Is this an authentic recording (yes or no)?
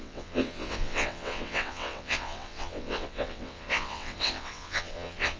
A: no